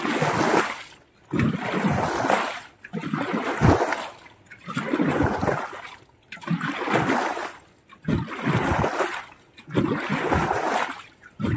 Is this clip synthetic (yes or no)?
no